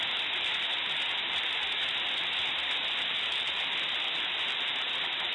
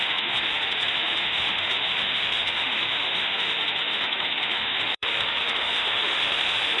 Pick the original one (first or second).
first